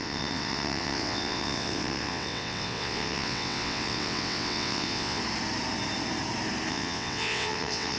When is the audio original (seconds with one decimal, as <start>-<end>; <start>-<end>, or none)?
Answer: 5.2-6.7